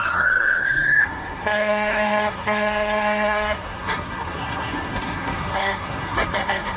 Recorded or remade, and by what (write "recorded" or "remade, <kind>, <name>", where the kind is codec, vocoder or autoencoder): remade, codec, SNAC